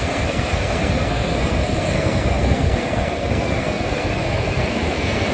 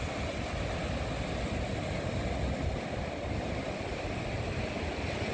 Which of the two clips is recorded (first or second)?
second